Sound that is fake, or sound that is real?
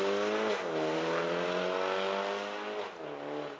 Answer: real